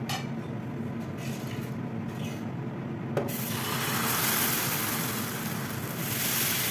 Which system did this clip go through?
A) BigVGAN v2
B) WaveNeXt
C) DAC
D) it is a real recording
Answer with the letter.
D